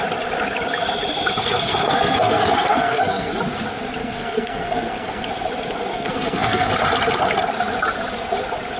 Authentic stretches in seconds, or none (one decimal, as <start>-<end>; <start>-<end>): 0.0-1.4; 3.3-4.0; 5.3-5.9; 6.7-8.8